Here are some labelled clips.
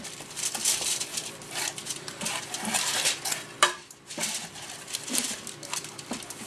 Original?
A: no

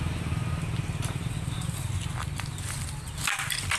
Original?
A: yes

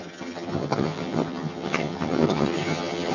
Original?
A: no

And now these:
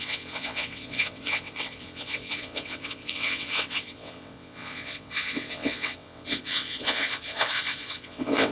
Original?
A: no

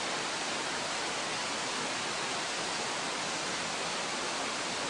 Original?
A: yes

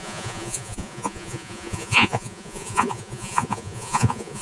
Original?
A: no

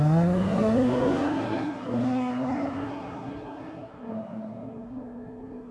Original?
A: no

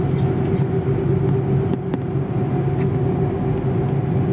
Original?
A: yes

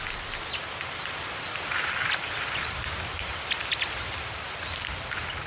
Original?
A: yes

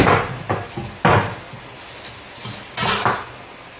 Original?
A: yes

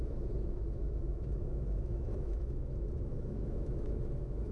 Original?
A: no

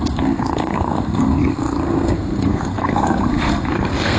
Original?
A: no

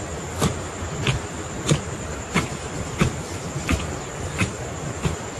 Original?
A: yes